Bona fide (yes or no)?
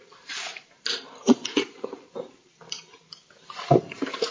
no